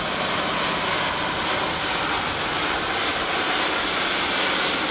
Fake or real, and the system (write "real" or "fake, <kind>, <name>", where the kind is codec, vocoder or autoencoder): real